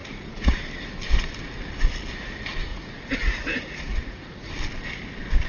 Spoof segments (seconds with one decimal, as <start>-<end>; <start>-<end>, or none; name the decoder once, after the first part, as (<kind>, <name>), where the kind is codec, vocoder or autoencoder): 0.0-0.6 (vocoder, Vocos); 2.7-4.5